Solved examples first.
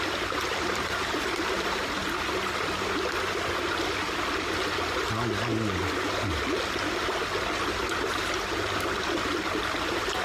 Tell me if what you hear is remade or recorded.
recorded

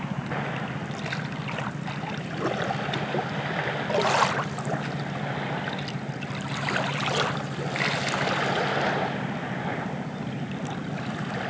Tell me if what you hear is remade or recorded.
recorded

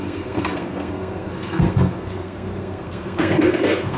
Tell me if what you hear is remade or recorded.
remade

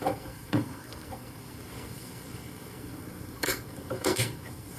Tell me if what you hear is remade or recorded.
remade